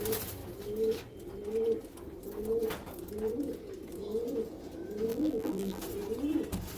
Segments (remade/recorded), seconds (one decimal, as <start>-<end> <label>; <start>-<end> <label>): 0.0-5.1 recorded; 5.1-5.8 remade; 5.8-6.8 recorded